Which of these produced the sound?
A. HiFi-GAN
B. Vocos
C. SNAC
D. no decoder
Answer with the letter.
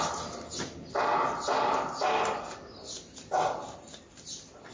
D